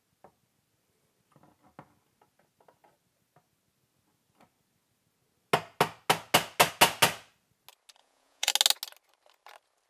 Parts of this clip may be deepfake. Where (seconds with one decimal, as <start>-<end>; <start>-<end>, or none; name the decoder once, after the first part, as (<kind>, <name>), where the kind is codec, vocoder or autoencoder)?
8.0-8.5 (vocoder, Vocos)